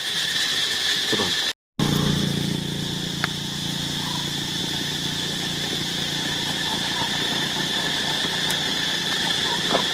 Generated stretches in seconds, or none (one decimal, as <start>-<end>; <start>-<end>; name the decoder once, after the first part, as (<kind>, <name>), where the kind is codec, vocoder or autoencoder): none